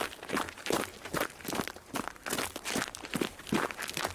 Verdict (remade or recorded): recorded